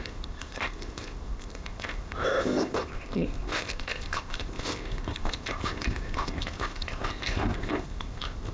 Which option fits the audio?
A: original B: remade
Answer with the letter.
B